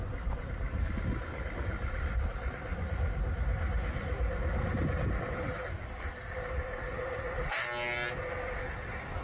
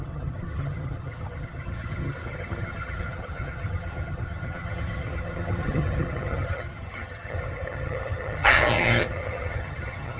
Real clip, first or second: first